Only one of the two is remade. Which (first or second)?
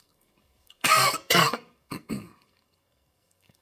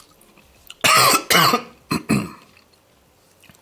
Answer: first